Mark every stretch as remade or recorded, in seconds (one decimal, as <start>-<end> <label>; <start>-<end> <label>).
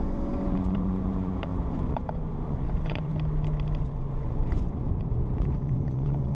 0.0-3.1 remade; 3.1-3.8 recorded; 3.8-6.3 remade